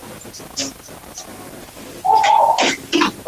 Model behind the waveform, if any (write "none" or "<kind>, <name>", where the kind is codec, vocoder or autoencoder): none